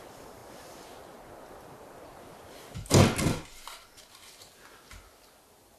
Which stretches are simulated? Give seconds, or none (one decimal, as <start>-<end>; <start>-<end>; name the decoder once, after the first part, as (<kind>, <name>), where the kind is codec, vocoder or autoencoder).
none